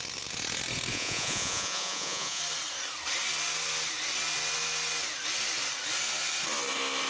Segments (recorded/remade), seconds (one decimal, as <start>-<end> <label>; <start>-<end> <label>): 0.0-0.9 recorded; 0.9-2.4 remade; 2.4-7.1 recorded